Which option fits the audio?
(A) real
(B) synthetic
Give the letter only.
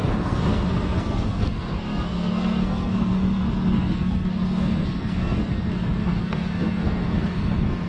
B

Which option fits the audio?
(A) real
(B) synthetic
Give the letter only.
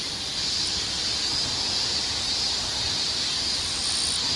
A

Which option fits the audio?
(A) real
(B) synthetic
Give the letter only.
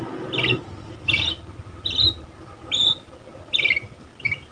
A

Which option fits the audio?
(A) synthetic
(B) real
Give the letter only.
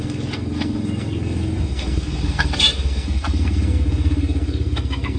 A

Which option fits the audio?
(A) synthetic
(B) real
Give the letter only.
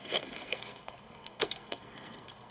A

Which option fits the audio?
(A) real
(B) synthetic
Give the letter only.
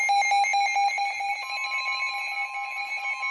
A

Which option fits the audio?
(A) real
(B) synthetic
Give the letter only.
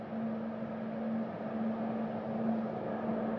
A